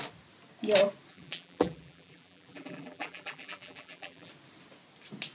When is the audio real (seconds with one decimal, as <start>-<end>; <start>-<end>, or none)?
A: 0.0-1.1; 4.3-5.3